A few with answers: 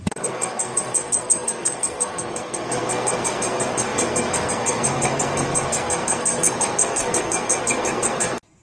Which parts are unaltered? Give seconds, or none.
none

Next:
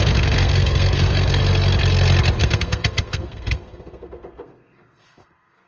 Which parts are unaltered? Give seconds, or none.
1.4-2.4

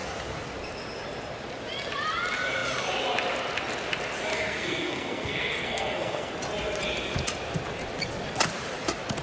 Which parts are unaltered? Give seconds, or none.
0.0-4.3; 6.3-9.2

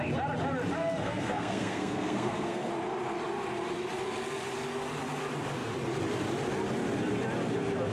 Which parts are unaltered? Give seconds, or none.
0.0-0.8; 2.7-7.9

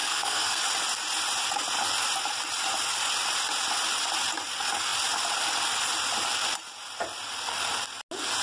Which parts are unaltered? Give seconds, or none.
0.6-8.4